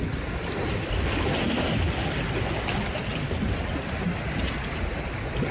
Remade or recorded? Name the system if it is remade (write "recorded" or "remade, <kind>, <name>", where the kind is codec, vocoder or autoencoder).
recorded